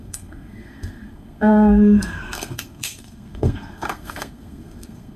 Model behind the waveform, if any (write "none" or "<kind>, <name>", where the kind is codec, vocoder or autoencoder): codec, SNAC